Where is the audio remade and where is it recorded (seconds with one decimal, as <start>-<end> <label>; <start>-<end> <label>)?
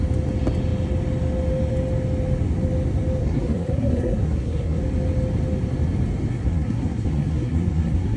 0.0-3.2 recorded; 3.2-4.8 remade; 4.8-6.3 recorded; 6.3-8.2 remade